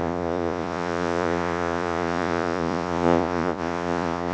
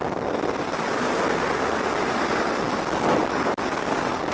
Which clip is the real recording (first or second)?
second